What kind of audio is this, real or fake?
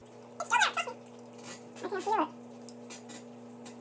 real